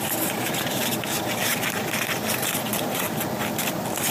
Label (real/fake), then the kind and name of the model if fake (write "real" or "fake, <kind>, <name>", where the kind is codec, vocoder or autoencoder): real